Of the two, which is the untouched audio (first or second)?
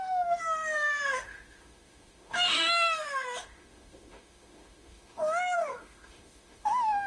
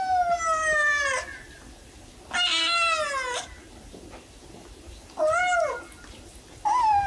second